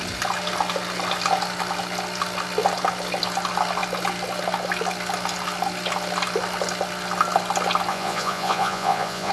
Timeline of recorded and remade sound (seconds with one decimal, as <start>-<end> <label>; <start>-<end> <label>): 0.0-7.9 recorded; 7.9-9.3 remade